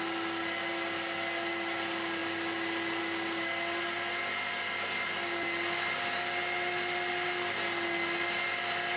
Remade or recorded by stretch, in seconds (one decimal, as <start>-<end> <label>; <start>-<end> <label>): 0.0-9.0 recorded